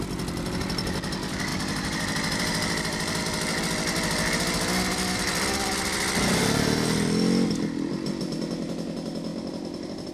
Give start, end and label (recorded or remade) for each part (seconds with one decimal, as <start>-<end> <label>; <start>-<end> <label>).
0.0-1.5 recorded; 1.5-3.2 remade; 3.2-4.9 recorded; 4.9-7.9 remade; 7.9-9.3 recorded; 9.3-10.1 remade